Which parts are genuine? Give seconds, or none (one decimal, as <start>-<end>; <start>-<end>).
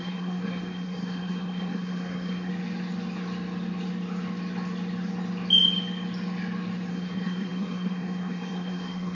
2.5-6.9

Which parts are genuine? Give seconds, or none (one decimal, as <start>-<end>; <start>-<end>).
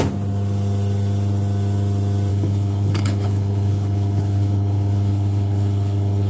0.0-2.3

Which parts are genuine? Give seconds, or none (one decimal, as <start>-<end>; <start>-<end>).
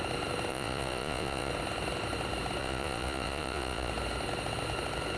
0.0-0.5; 1.5-2.6; 3.9-5.2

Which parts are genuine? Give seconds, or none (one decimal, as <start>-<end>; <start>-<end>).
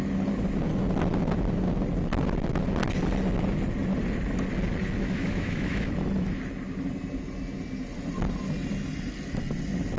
0.0-5.0; 5.9-10.0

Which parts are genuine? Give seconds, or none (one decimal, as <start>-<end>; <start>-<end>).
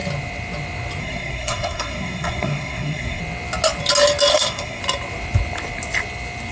0.0-1.0; 3.2-4.3; 4.8-6.5